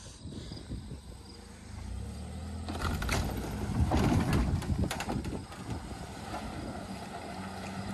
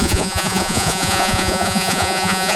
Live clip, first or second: first